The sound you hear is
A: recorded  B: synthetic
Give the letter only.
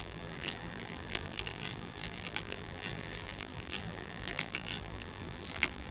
B